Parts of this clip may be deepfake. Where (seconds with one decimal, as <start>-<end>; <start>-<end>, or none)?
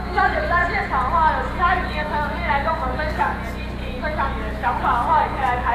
0.0-0.6; 1.6-3.3; 4.0-5.7